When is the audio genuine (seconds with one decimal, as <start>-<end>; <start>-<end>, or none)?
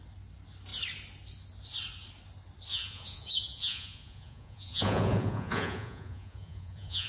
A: 0.0-2.7